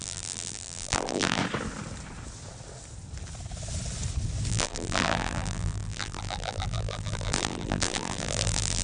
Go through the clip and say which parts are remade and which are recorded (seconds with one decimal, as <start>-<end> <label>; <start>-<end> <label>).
0.0-1.4 remade; 1.4-4.5 recorded; 4.5-8.8 remade